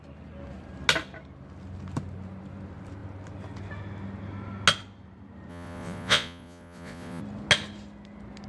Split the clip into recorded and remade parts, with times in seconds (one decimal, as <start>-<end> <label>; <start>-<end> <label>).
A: 0.0-5.5 recorded; 5.5-7.2 remade; 7.2-8.5 recorded